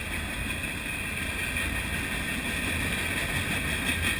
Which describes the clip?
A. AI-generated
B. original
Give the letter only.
B